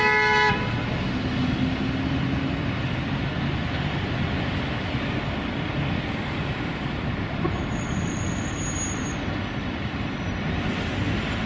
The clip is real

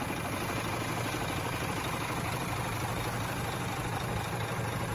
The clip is real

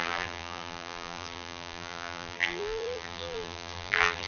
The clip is fake